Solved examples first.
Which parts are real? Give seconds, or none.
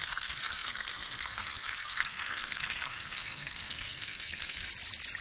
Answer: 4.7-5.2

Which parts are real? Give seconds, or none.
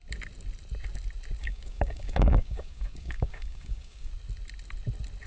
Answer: 0.0-1.4; 4.1-5.3